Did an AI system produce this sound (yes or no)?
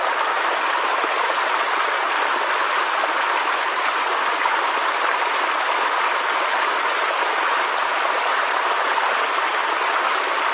no